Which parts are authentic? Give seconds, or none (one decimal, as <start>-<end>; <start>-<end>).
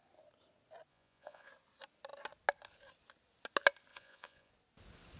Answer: 0.0-0.9; 1.5-3.9; 4.5-5.2